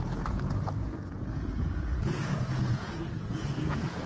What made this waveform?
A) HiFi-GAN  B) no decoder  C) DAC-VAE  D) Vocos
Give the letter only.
D